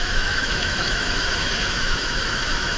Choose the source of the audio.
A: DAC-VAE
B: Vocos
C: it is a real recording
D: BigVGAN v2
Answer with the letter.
A